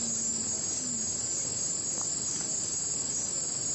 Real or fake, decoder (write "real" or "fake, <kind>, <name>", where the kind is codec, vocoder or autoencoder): real